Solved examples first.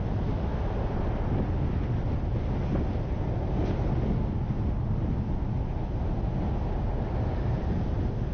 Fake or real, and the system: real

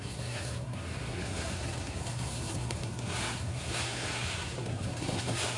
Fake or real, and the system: fake, codec, SNAC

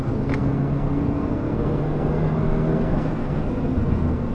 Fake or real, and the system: fake, codec, SNAC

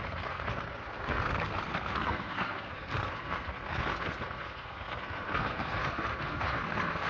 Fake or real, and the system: fake, codec, SNAC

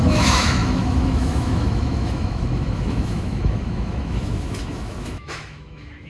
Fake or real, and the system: fake, autoencoder, DAC-VAE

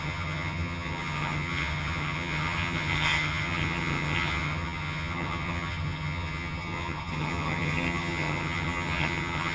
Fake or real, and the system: fake, vocoder, HiFi-GAN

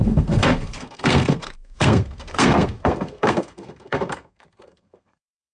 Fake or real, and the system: fake, codec, SNAC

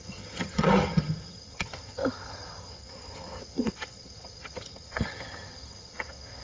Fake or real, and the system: fake, vocoder, HiFi-GAN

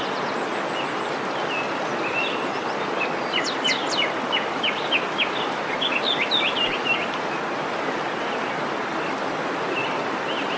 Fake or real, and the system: real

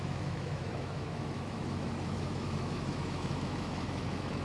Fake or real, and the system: fake, autoencoder, DAC-VAE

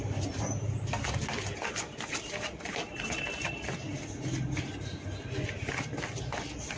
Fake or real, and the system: real